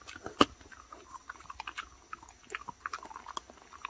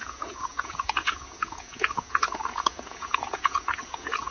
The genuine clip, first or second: first